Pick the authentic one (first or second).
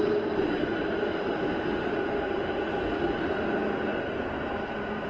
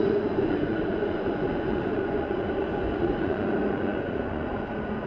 first